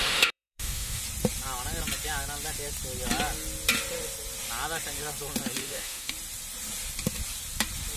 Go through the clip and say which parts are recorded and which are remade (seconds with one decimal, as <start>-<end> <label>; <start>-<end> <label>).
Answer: 0.0-1.0 remade; 1.0-5.6 recorded; 5.6-6.1 remade; 6.1-8.0 recorded